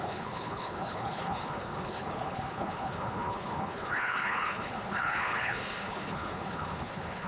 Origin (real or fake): fake